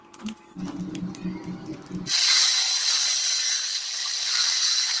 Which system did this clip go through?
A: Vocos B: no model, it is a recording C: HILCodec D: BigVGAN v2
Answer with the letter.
B